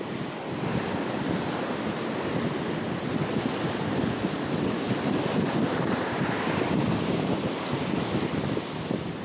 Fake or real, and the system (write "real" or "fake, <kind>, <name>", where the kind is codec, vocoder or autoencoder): real